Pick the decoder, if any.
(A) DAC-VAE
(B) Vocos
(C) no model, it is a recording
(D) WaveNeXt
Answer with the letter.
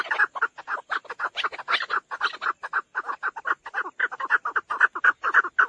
C